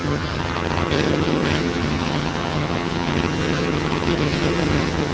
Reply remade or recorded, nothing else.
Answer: remade